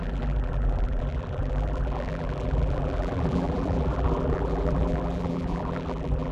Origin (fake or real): fake